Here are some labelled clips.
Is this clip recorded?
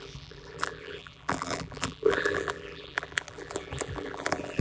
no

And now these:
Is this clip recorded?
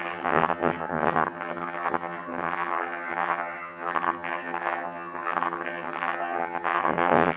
no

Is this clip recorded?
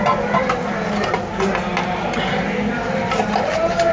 yes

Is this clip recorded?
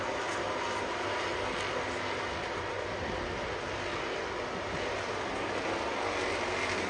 yes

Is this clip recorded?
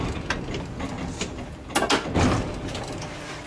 yes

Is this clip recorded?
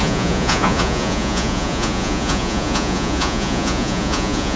no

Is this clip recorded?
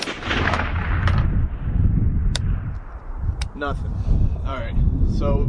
no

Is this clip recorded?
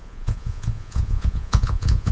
no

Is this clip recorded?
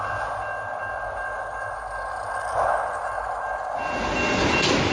yes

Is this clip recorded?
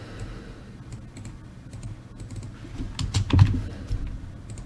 yes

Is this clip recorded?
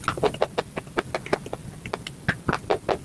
yes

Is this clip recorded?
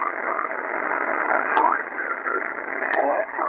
no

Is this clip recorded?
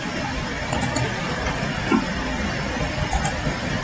yes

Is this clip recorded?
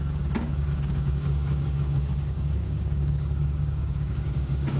no